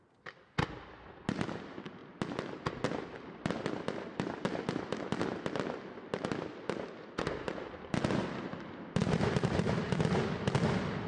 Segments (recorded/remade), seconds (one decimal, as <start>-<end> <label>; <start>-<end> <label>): 0.0-11.1 recorded

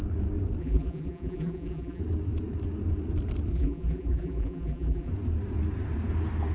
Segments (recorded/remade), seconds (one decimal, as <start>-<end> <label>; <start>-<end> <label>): 0.0-0.6 recorded; 0.6-2.0 remade; 2.0-3.5 recorded; 3.5-5.1 remade; 5.1-6.5 recorded

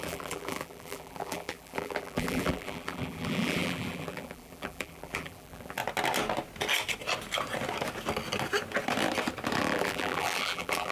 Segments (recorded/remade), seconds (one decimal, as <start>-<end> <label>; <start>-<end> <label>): 0.0-5.8 remade; 5.8-9.6 recorded; 9.6-10.9 remade

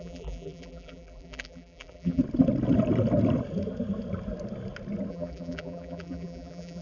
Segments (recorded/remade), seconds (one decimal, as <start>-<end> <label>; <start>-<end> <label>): 0.0-2.2 remade; 2.2-5.1 recorded; 5.1-6.8 remade

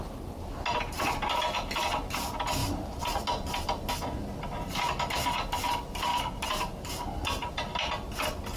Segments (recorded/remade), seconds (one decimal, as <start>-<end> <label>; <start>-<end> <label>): 0.0-6.1 recorded; 6.1-6.9 remade; 6.9-8.6 recorded

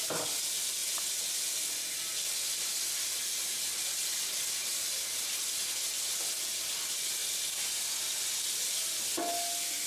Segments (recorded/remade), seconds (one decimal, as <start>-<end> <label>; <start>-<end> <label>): 0.0-9.9 recorded

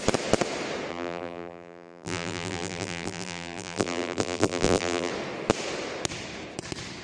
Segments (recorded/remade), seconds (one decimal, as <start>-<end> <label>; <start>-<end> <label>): 0.0-0.9 recorded; 0.9-5.1 remade; 5.1-7.0 recorded

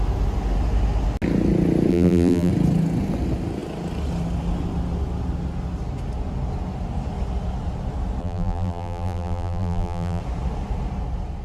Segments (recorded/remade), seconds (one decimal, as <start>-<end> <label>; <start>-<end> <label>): 0.0-1.9 recorded; 1.9-2.5 remade; 2.5-8.2 recorded; 8.2-10.2 remade; 10.2-11.4 recorded